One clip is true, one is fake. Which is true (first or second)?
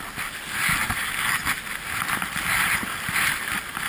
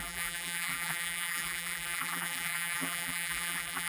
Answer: first